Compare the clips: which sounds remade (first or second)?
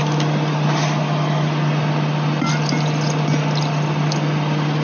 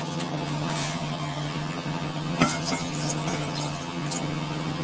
second